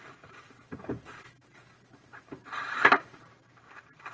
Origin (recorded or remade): remade